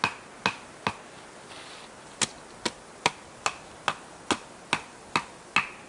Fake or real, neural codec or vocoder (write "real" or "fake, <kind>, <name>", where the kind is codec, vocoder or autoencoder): real